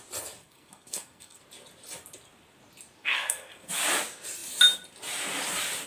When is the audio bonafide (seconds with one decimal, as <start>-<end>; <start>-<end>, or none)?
0.0-0.4; 1.4-3.0; 3.7-5.9